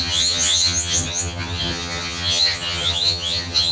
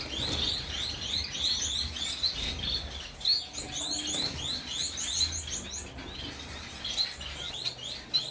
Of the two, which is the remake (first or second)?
first